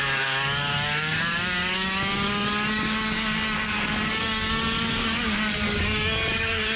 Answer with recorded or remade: remade